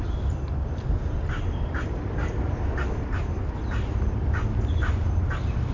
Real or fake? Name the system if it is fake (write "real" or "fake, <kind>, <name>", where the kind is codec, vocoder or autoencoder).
real